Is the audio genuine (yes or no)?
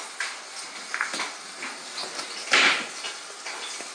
yes